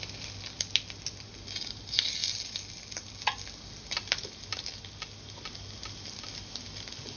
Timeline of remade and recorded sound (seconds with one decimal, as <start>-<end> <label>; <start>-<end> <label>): 0.0-7.2 recorded